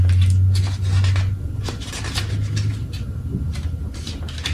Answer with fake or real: real